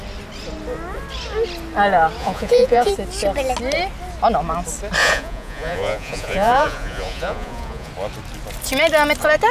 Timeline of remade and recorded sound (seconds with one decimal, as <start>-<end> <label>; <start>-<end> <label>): 0.0-2.2 recorded; 2.2-2.9 remade; 2.9-5.0 recorded; 5.0-7.9 remade; 7.9-9.5 recorded